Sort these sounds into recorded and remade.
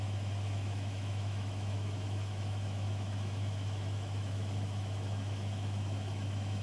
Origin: remade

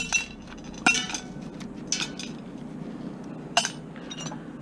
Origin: recorded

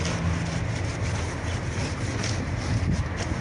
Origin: recorded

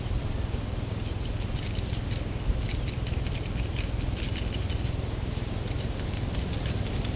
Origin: recorded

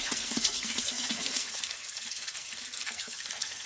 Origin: remade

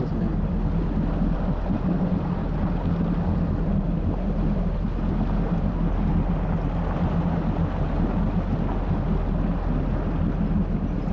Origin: recorded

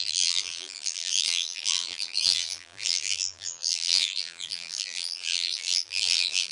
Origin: remade